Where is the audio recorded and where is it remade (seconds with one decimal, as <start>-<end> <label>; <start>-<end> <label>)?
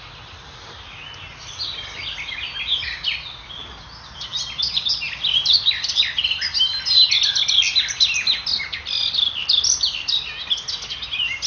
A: 0.0-11.5 recorded